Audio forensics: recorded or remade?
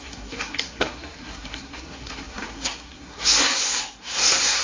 remade